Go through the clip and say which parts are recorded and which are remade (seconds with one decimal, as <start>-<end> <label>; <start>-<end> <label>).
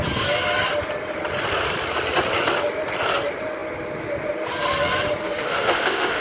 0.0-5.2 recorded; 5.2-6.2 remade